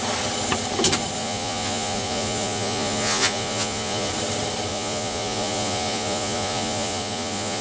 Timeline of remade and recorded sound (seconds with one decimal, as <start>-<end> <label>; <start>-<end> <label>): 0.0-1.2 recorded; 1.2-4.1 remade; 4.1-4.7 recorded; 4.7-7.6 remade